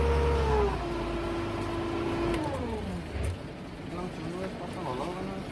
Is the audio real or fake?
real